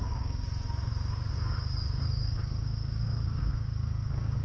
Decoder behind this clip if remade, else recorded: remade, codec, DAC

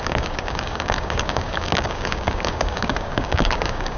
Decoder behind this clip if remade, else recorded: remade, codec, DAC